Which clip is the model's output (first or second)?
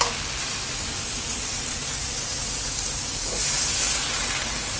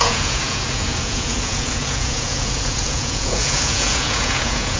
second